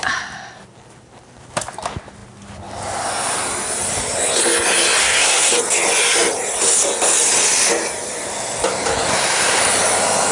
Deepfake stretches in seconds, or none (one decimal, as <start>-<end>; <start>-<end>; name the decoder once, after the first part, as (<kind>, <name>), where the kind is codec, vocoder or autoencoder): 5.0-5.5 (codec, SNAC); 9.1-9.6